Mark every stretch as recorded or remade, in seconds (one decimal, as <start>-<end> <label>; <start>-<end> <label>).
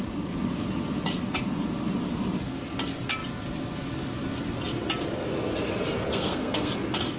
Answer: 0.0-6.1 recorded; 6.1-6.7 remade; 6.7-7.2 recorded